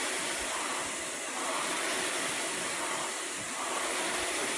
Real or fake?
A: real